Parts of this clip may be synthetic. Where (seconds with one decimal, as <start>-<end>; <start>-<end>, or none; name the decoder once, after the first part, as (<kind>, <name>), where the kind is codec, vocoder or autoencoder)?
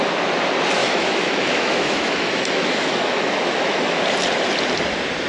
0.8-4.0 (autoencoder, DAC-VAE)